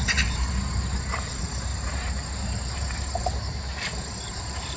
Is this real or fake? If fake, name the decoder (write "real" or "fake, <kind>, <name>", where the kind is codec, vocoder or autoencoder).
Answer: fake, vocoder, BigVGAN v2